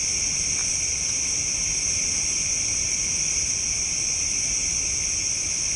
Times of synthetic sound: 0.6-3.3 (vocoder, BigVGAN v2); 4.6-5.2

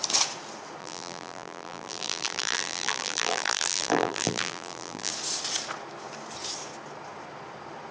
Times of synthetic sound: 0.8-5.1 (vocoder, BigVGAN v2)

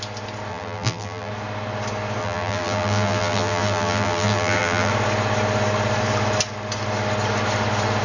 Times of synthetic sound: 0.5-1.3 (vocoder, BigVGAN v2); 2.2-4.9

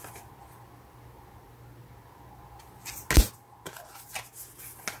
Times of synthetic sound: none

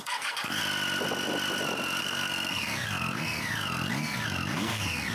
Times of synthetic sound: 0.0-0.6 (codec, SNAC); 2.0-5.1

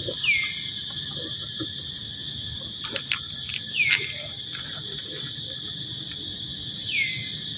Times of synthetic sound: none